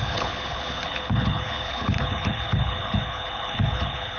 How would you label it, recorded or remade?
remade